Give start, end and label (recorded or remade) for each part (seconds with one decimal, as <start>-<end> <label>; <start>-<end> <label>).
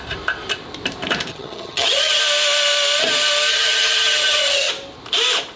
0.0-1.3 recorded; 1.3-2.2 remade; 2.2-3.5 recorded; 3.5-4.7 remade; 4.7-5.6 recorded